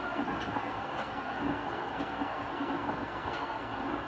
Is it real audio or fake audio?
fake